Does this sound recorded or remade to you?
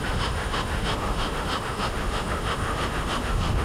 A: remade